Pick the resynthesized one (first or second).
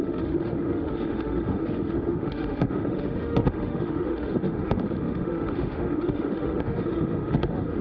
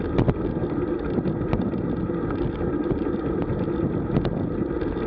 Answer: first